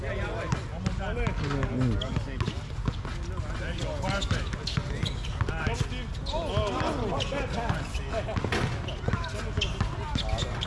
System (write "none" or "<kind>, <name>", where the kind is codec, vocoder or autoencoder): none